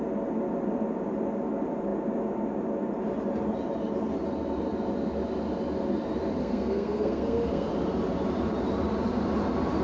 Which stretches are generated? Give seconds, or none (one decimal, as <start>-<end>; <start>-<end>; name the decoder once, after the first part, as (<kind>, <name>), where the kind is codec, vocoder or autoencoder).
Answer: 6.4-7.7 (codec, SNAC)